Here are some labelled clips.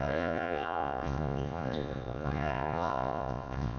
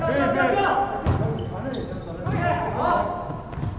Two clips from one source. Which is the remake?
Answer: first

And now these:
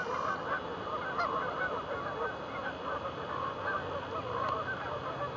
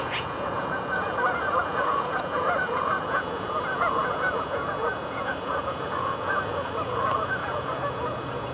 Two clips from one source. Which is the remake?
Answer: second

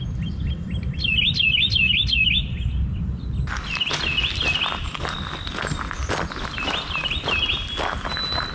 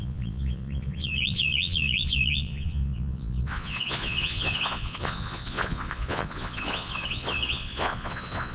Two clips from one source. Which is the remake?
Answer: second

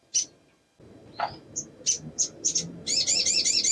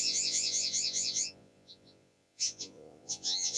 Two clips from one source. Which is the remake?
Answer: second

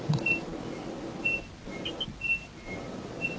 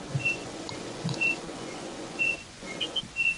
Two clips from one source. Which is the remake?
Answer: second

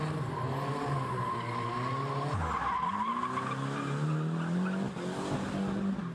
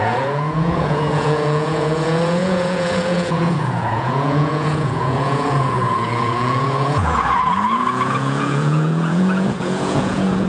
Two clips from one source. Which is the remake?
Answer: second